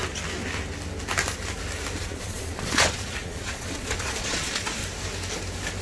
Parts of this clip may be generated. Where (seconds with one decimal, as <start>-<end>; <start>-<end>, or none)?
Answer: 2.0-4.8